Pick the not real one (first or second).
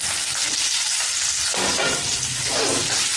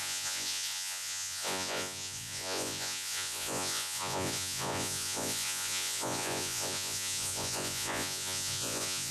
second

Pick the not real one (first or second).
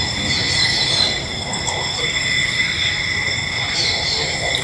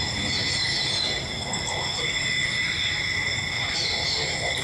first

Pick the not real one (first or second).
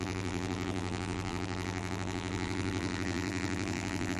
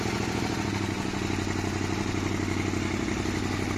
first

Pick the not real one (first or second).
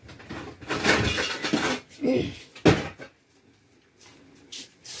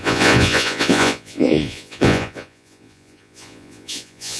second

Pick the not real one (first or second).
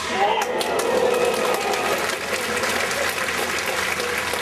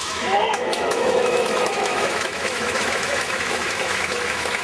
second